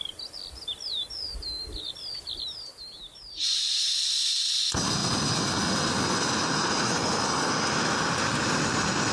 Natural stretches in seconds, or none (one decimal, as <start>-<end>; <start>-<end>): 0.0-9.1